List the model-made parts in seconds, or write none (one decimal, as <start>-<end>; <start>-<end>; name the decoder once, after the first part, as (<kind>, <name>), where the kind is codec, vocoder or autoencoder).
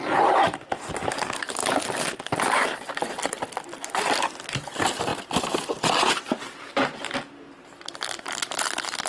0.0-1.6 (vocoder, BigVGAN v2); 2.6-9.1